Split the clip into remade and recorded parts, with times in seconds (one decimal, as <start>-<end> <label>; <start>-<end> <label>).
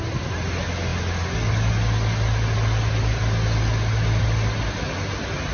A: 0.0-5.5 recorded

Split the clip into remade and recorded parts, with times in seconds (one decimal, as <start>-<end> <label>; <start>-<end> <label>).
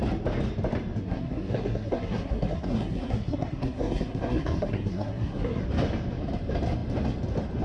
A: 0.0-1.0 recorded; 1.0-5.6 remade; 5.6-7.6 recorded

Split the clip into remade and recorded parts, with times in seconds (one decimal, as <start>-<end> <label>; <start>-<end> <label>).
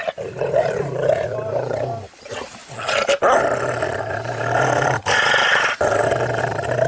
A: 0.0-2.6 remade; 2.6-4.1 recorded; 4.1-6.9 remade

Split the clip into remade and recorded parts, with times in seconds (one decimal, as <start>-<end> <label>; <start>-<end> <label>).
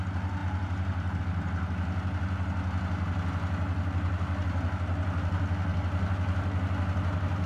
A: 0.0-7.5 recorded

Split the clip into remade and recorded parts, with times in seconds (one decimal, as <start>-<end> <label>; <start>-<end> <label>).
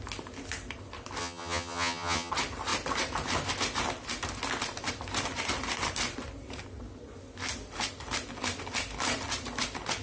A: 0.0-1.2 recorded; 1.2-2.3 remade; 2.3-10.0 recorded